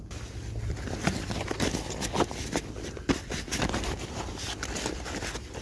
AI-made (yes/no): no